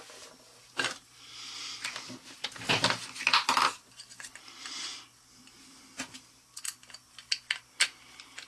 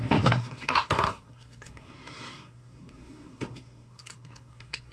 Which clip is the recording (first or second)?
first